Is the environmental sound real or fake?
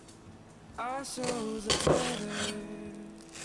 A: real